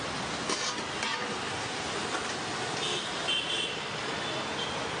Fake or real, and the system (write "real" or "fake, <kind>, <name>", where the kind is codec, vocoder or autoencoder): real